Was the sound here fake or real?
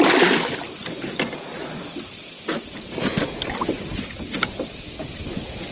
real